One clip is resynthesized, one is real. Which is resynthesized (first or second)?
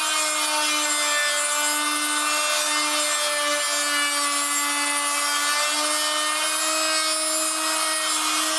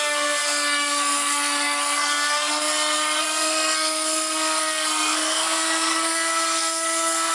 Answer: second